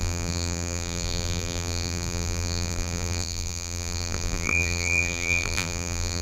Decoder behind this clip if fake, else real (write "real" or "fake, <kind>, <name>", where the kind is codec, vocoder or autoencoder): fake, vocoder, BigVGAN v2